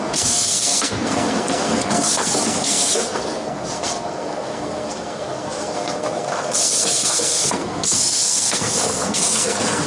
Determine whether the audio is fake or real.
fake